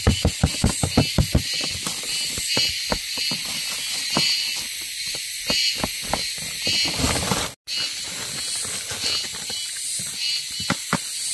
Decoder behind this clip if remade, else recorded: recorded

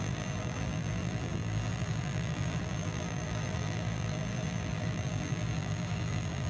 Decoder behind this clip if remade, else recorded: remade, vocoder, BigVGAN v2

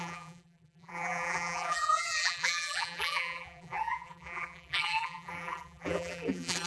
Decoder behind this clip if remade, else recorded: remade, vocoder, BigVGAN v2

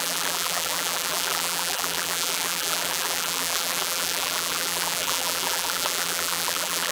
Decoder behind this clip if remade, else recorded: remade, vocoder, BigVGAN v2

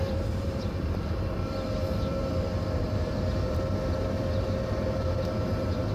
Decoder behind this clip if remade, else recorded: remade, vocoder, BigVGAN v2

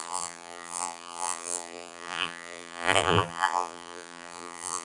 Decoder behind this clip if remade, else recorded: remade, vocoder, BigVGAN v2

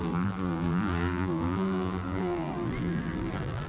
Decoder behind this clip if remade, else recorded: remade, vocoder, BigVGAN v2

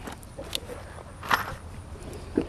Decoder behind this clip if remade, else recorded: recorded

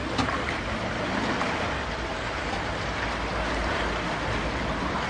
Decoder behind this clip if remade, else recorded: recorded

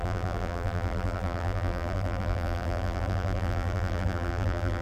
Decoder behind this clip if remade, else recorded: remade, vocoder, BigVGAN v2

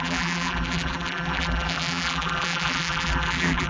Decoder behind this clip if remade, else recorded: remade, vocoder, BigVGAN v2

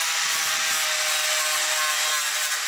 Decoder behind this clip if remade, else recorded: recorded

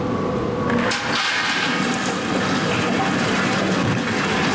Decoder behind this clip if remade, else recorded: recorded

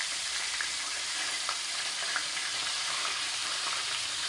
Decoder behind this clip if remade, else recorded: remade, vocoder, BigVGAN v2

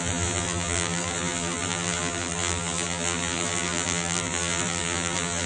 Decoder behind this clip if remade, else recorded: remade, vocoder, BigVGAN v2